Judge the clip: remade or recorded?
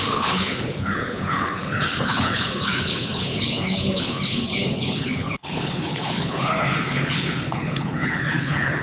remade